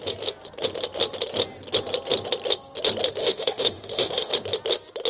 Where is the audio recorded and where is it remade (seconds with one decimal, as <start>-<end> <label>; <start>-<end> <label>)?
0.0-3.2 recorded; 3.2-4.3 remade; 4.3-5.1 recorded